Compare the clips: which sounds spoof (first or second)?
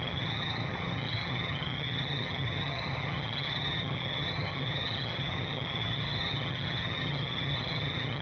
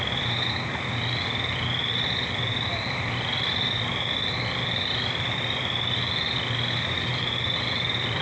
first